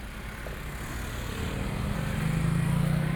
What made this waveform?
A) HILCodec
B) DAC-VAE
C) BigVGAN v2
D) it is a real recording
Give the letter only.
D